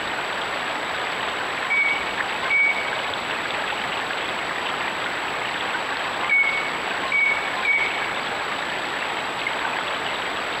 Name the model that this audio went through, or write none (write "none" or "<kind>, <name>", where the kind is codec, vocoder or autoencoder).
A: none